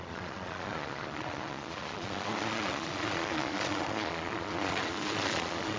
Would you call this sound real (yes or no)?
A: no